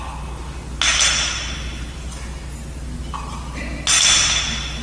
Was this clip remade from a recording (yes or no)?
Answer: no